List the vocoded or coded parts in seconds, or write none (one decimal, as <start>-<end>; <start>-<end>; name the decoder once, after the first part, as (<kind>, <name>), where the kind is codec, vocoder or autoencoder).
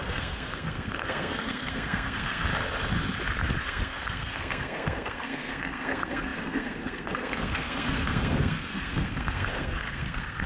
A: 0.0-2.5 (codec, SNAC); 3.6-10.5